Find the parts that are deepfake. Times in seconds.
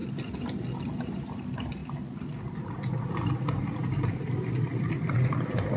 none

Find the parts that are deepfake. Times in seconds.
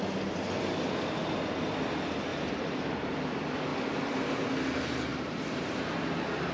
2.3-3.1; 5.1-5.7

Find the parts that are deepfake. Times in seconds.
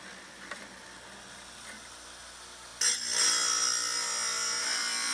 none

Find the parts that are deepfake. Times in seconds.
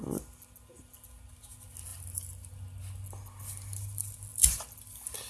1.9-2.6; 4.3-5.3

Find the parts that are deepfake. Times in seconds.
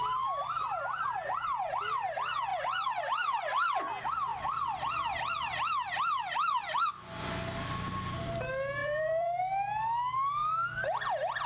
2.5-3.8; 8.8-9.4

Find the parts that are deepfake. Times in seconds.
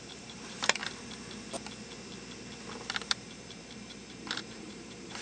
0.0-0.8; 3.1-5.2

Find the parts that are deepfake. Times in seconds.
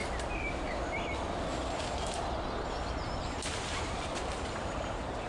3.2-5.3